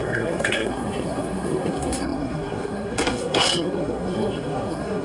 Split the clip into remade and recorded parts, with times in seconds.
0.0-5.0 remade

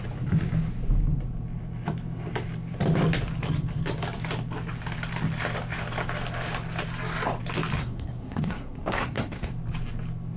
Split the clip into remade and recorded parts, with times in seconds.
0.0-7.8 recorded; 7.8-9.5 remade; 9.5-10.4 recorded